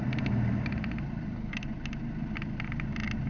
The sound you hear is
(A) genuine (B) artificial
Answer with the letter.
A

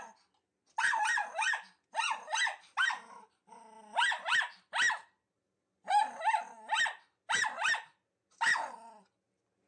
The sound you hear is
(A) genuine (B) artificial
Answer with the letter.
A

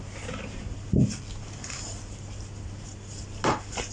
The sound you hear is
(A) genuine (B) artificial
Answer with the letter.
A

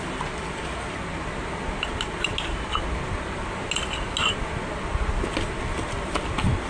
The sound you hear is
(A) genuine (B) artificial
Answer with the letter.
A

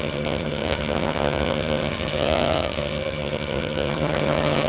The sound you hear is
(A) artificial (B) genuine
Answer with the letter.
A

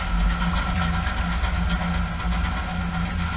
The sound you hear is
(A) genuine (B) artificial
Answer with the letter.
A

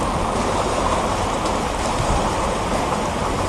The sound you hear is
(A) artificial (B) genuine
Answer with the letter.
B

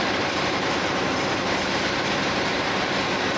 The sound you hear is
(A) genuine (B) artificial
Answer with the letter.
B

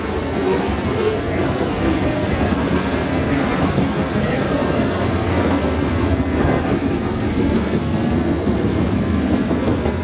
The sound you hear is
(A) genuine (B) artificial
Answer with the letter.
B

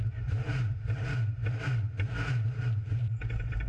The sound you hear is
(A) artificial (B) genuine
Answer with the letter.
A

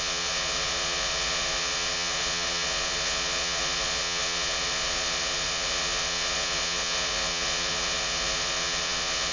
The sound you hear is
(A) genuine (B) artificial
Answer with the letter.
B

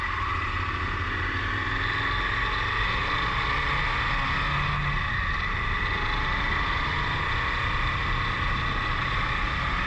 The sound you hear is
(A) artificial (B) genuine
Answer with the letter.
B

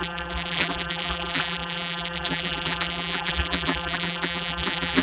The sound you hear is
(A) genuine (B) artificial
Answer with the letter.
B